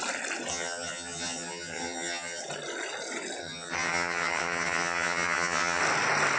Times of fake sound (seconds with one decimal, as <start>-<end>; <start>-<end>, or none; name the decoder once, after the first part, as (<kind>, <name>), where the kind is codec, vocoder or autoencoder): 0.5-2.4 (vocoder, HiFi-GAN); 3.4-5.8